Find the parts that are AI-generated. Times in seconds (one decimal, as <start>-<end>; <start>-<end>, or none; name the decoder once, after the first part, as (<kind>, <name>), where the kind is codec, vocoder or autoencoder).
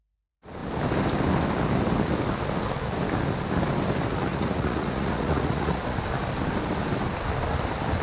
4.3-6.0 (vocoder, Vocos)